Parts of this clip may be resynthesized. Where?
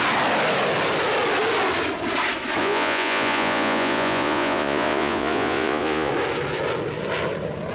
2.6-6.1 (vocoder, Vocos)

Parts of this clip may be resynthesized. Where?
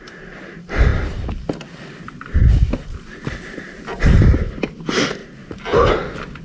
0.0-0.9 (vocoder, BigVGAN v2); 2.0-5.2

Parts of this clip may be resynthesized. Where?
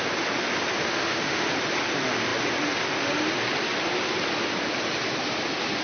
0.8-1.4 (autoencoder, DAC-VAE)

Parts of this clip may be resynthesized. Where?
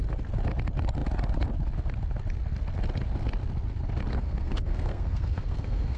4.1-6.0 (codec, SNAC)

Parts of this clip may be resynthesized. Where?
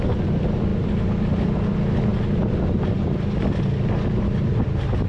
none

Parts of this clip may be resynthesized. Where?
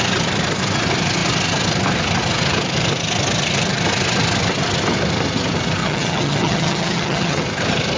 5.8-7.4 (vocoder, HiFi-GAN)